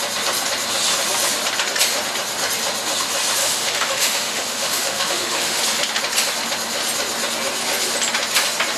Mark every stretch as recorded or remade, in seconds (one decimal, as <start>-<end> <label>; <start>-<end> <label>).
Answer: 0.0-3.4 recorded; 3.4-5.6 remade; 5.6-8.8 recorded